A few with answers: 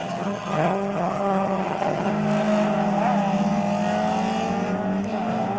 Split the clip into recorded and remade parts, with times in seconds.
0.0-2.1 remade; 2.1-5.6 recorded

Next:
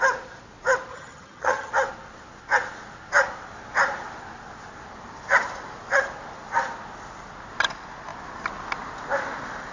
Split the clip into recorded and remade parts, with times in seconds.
0.0-0.9 recorded; 0.9-1.7 remade; 1.7-9.7 recorded

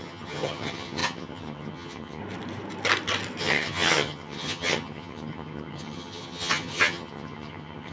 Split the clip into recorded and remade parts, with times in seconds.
0.0-2.2 remade; 2.2-3.4 recorded; 3.4-7.9 remade

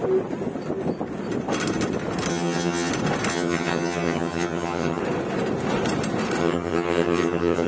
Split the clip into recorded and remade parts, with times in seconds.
0.0-2.3 recorded; 2.3-2.9 remade; 2.9-3.3 recorded; 3.3-5.0 remade; 5.0-6.4 recorded; 6.4-7.7 remade

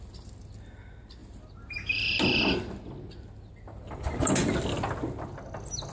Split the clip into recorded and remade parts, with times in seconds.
0.0-5.9 recorded

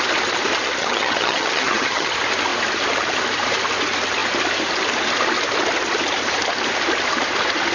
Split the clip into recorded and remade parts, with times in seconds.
0.0-0.8 recorded; 0.8-2.1 remade; 2.1-7.7 recorded